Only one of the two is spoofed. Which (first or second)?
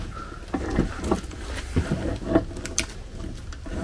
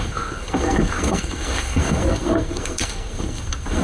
second